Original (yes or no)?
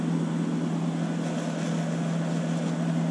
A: yes